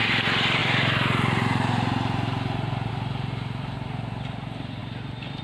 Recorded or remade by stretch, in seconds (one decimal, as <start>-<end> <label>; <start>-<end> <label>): 0.0-5.4 recorded